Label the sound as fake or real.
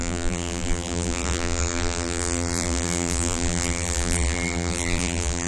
fake